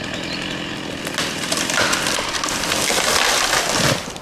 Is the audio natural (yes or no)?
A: yes